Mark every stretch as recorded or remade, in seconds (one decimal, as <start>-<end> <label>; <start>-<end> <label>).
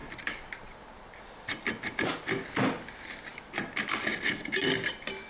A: 0.0-1.2 remade; 1.2-5.3 recorded